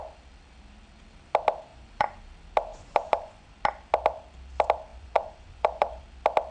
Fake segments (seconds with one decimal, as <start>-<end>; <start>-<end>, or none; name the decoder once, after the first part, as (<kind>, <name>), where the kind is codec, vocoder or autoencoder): 1.7-2.2 (vocoder, Vocos); 2.7-3.5; 4.9-6.0